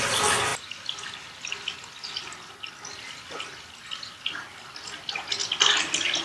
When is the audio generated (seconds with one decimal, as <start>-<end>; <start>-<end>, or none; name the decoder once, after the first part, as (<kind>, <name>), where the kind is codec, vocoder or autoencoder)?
none